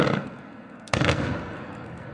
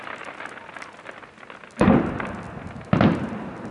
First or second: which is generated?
first